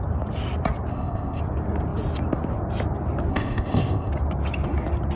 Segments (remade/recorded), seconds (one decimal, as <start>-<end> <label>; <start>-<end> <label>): 0.0-0.9 recorded; 0.9-1.4 remade; 1.4-3.3 recorded; 3.3-4.1 remade; 4.1-5.2 recorded